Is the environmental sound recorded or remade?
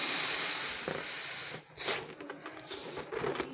recorded